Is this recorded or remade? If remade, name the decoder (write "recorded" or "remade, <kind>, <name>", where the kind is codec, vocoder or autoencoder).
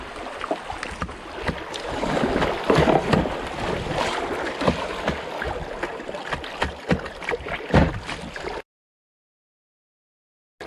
recorded